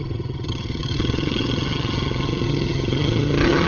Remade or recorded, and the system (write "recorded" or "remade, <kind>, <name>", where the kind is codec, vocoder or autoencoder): remade, vocoder, HiFi-GAN